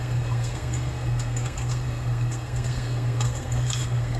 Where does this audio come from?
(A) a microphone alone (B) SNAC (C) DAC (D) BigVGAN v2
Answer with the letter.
B